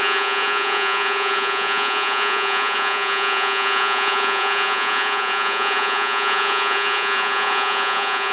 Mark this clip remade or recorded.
remade